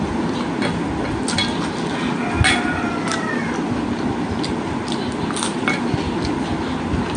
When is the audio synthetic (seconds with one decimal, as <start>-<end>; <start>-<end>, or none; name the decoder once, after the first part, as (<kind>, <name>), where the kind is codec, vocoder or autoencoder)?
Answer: none